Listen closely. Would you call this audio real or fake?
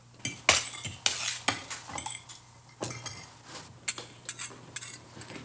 real